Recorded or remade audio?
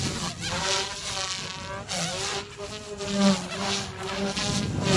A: recorded